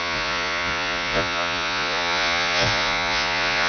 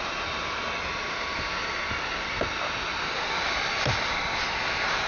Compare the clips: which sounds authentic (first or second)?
second